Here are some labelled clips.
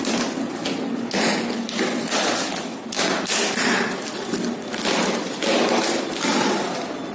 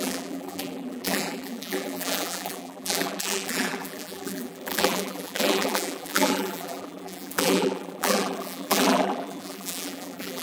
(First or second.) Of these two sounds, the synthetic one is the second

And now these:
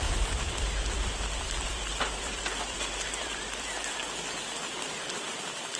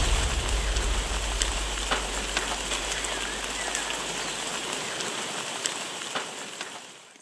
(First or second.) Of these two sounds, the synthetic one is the first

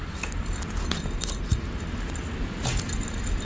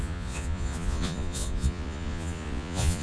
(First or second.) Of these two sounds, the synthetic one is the second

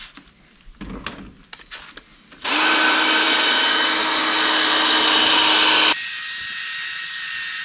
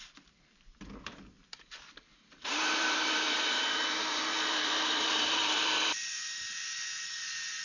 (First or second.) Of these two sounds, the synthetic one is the second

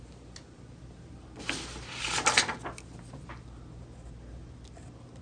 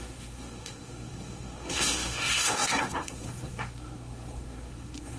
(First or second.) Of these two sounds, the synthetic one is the second